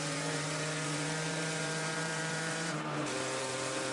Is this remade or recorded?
remade